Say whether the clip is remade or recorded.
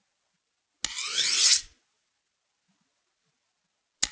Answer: recorded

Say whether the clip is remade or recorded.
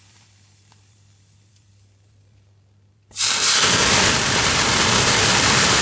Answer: remade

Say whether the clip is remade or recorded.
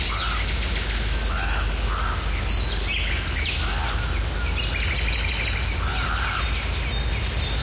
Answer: recorded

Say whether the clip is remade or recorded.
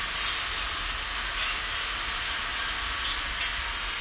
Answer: recorded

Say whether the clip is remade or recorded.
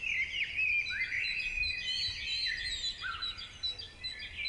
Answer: recorded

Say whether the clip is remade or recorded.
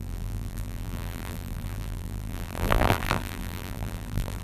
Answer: remade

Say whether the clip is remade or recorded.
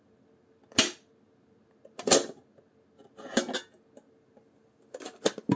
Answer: recorded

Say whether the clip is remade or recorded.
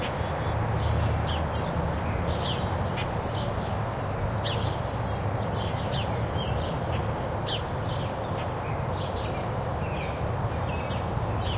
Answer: recorded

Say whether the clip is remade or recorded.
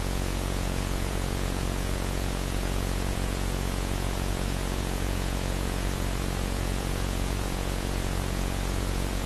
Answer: remade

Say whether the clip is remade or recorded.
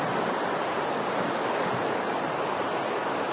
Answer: recorded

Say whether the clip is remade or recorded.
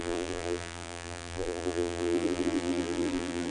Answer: remade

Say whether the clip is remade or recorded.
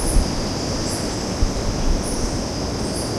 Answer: recorded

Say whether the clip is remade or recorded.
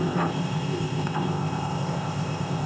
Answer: remade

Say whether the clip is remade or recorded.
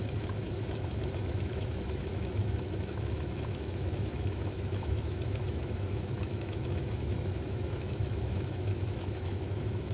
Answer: remade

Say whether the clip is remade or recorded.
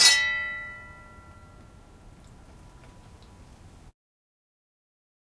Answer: recorded